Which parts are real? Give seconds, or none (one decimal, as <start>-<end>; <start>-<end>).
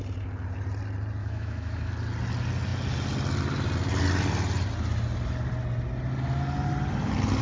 0.0-1.2; 1.9-7.4